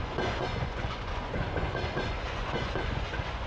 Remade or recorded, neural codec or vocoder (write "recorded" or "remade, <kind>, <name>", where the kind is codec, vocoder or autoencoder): remade, vocoder, Vocos